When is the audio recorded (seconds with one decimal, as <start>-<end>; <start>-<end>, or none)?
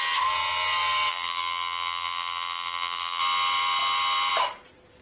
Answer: 0.0-1.1; 3.2-5.0